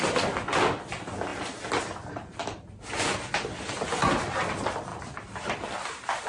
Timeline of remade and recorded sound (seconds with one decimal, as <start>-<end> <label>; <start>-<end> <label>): 0.0-4.9 recorded; 4.9-6.3 remade